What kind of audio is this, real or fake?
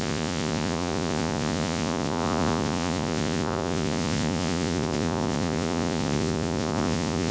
fake